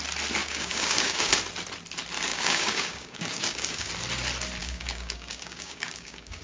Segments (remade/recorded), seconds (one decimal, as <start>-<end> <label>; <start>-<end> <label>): 0.0-0.4 recorded; 0.4-1.3 remade; 1.3-2.3 recorded; 2.3-3.9 remade; 3.9-4.6 recorded; 4.6-6.4 remade